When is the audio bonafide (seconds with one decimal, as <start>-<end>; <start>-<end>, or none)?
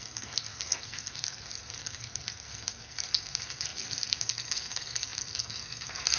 none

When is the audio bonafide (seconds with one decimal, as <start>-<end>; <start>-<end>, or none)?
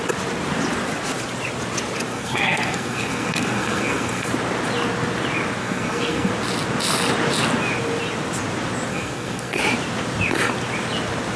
0.0-2.1; 4.3-5.6; 6.3-8.9; 9.6-11.4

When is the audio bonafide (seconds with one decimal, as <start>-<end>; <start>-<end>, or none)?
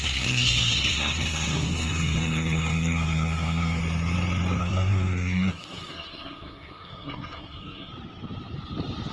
3.8-4.6; 7.9-9.1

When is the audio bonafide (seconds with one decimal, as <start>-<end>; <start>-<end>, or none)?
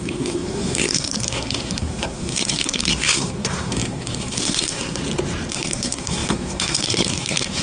5.0-5.5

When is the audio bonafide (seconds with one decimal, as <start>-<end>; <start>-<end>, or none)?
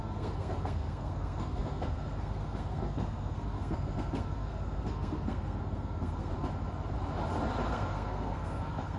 6.3-7.7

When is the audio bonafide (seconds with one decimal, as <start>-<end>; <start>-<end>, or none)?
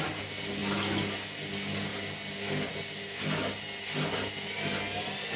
0.0-5.4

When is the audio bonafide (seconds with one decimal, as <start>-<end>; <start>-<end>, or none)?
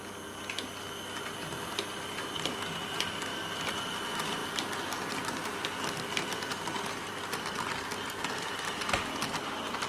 0.0-9.9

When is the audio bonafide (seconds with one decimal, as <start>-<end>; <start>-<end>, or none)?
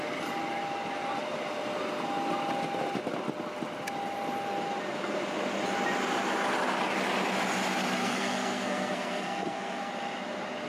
0.0-8.0; 9.9-10.7